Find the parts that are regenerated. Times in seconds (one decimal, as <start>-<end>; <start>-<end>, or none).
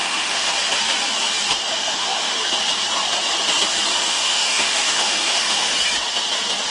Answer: 0.0-0.5; 1.7-2.4; 3.9-5.7